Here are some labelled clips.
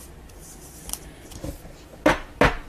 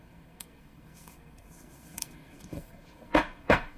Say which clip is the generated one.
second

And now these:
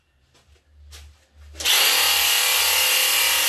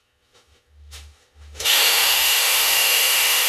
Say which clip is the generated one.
second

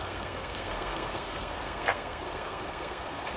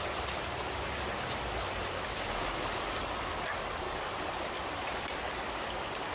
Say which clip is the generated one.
first